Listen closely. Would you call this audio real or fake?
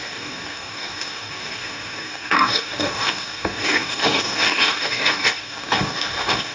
fake